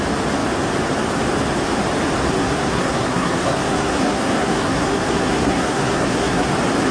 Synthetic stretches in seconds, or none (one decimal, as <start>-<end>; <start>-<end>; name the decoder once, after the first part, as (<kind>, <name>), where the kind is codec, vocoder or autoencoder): 2.4-6.5 (codec, SNAC)